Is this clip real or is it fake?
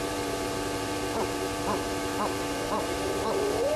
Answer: fake